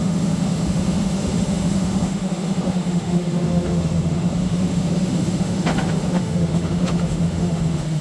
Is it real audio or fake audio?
fake